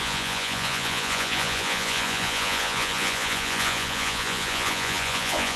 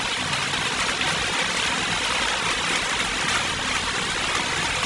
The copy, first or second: first